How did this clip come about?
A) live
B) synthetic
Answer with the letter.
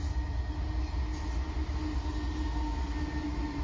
A